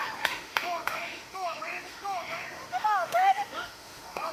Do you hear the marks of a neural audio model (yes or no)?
yes